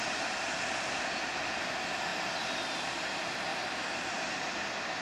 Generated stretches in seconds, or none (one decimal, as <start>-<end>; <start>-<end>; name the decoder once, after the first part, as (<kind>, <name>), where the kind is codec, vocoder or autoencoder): 2.1-3.0 (vocoder, BigVGAN v2); 3.5-5.0